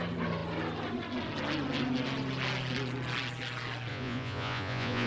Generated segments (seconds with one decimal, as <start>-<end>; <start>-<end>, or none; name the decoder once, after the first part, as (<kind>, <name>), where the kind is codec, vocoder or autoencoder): 3.9-5.1 (vocoder, Vocos)

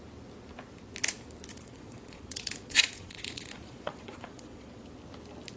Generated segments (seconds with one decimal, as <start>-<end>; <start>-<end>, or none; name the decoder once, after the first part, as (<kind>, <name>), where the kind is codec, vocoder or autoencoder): 1.5-4.9 (vocoder, Vocos)

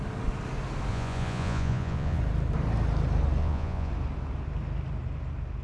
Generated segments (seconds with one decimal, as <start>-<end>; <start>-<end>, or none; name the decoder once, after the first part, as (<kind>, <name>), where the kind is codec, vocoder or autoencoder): 0.9-2.2 (vocoder, Vocos); 3.4-3.9

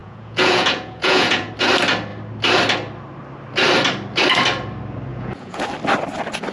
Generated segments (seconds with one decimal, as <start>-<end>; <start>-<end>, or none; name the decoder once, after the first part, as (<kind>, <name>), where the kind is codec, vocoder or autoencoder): 0.0-1.5 (vocoder, Vocos); 5.1-5.6

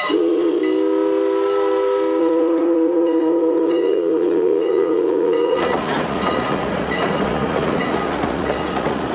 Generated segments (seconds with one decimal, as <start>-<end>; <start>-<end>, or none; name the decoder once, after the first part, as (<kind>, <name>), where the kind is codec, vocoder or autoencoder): 0.0-0.6 (vocoder, Vocos); 2.2-9.1

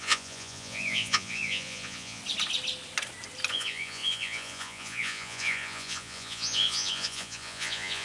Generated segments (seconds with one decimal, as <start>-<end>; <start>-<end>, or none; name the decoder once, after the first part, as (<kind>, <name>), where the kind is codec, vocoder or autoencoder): 0.0-2.2 (vocoder, Vocos); 3.5-8.0

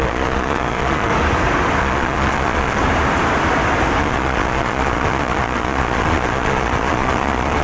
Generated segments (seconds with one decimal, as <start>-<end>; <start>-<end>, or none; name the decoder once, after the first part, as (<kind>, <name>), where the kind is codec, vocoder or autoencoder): 0.0-1.1 (vocoder, Vocos); 1.8-2.8; 4.0-7.6